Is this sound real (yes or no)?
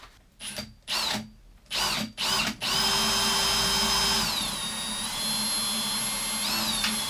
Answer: yes